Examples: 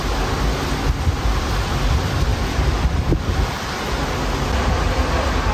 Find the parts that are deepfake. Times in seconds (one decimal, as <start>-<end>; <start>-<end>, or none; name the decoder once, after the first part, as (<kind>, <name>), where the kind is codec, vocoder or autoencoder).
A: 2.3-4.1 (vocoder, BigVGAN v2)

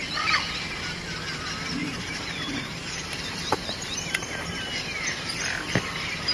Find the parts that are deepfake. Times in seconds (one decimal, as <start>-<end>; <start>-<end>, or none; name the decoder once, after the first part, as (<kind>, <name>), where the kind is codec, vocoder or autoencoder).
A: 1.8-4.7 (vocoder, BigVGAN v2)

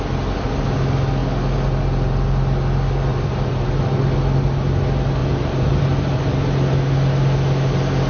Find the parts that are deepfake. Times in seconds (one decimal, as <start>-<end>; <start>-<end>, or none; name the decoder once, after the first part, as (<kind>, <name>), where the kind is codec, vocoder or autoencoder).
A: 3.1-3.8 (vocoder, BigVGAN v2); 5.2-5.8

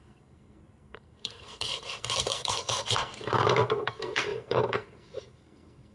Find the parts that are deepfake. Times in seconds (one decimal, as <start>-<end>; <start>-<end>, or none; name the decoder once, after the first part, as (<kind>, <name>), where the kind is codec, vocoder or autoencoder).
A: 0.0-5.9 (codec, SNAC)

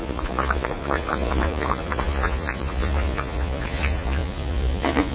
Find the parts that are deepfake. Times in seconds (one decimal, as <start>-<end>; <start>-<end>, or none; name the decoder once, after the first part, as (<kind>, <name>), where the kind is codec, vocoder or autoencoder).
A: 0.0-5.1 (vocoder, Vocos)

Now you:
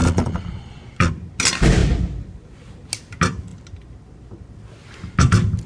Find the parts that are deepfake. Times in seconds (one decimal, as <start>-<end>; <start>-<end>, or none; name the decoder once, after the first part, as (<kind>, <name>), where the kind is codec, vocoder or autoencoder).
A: 0.0-1.1 (vocoder, Vocos)

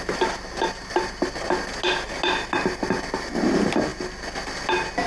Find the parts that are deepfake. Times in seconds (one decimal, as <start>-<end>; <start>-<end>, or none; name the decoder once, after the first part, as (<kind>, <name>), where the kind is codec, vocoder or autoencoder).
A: none